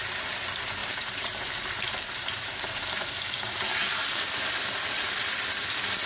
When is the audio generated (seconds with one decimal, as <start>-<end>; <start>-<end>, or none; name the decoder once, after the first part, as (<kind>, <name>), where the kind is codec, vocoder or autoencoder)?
0.8-4.2 (vocoder, BigVGAN v2)